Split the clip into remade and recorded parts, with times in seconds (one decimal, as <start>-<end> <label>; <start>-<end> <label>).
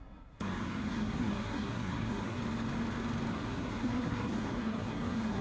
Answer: 0.0-2.4 remade; 2.4-3.3 recorded; 3.3-5.4 remade